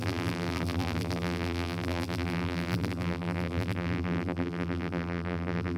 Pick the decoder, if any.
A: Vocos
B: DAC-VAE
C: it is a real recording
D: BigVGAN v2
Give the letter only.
D